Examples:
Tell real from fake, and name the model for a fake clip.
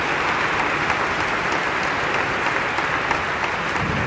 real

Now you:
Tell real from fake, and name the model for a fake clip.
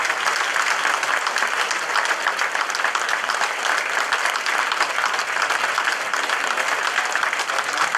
real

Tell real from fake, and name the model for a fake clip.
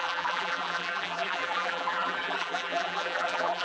fake, vocoder, BigVGAN v2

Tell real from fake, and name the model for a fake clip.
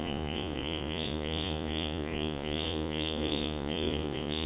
fake, vocoder, Vocos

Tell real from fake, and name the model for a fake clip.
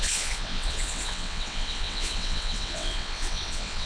fake, vocoder, WaveNeXt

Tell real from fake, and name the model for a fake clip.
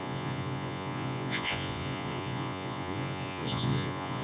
fake, vocoder, Vocos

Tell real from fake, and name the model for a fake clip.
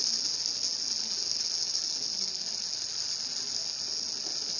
real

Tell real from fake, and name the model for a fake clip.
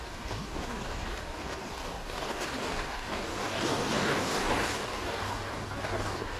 fake, codec, DAC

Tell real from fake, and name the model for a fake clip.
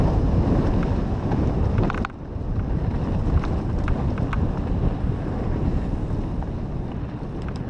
real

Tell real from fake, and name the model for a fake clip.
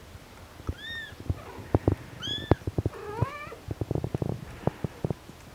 real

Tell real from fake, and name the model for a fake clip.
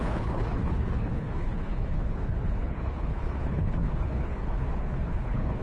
fake, codec, HILCodec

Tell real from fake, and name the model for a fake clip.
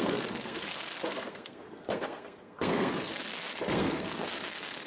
fake, codec, SNAC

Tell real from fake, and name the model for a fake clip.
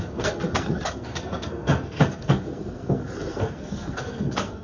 fake, codec, SNAC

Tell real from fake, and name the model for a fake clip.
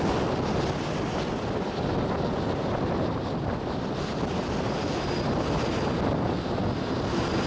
real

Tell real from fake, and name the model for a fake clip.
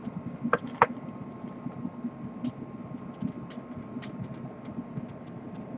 real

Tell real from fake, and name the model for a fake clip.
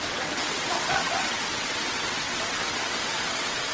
fake, vocoder, WaveNeXt